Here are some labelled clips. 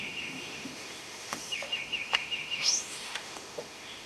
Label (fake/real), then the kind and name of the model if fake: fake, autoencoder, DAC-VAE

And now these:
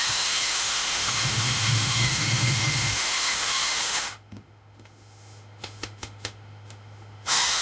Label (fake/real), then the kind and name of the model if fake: fake, autoencoder, DAC-VAE